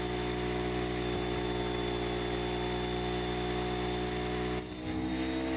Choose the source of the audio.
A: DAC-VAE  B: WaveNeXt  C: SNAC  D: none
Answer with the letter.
D